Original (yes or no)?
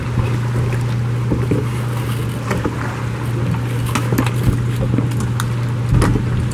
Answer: yes